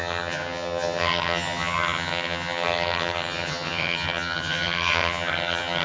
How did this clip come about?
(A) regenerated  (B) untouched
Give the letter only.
A